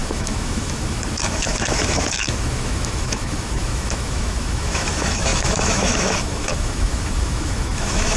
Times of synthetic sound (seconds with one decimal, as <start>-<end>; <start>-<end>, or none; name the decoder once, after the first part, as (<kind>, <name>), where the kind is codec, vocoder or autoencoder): 0.0-8.2 (autoencoder, DAC-VAE)